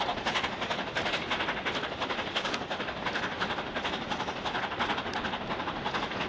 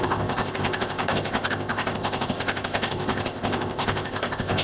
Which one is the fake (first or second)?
second